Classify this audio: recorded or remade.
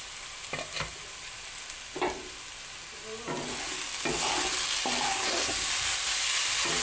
recorded